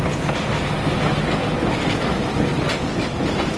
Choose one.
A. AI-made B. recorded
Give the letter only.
B